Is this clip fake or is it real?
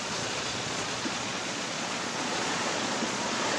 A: fake